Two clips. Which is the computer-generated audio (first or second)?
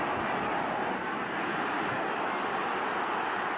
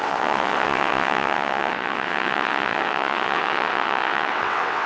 second